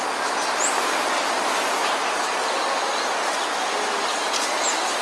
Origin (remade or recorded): recorded